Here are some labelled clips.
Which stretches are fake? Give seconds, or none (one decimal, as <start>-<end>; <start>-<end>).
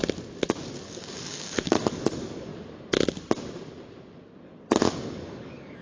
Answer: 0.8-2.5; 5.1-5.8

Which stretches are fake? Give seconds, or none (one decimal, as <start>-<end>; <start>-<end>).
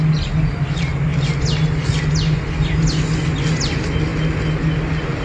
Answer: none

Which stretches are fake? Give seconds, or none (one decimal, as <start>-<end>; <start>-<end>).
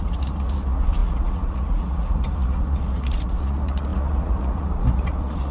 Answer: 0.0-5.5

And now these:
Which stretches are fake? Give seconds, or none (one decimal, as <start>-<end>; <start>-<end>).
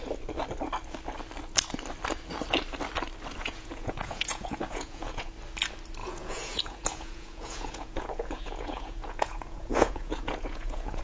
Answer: 3.4-5.3; 6.0-11.0